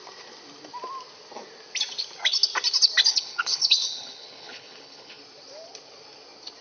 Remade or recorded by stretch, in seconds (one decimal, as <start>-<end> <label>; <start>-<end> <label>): 0.0-3.1 recorded; 3.1-5.2 remade; 5.2-6.6 recorded